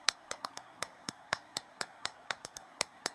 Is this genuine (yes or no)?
no